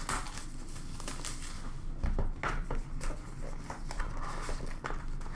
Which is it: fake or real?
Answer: real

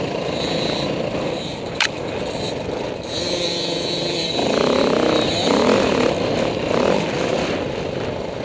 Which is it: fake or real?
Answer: fake